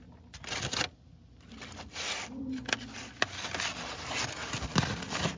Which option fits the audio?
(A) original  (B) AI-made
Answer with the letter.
A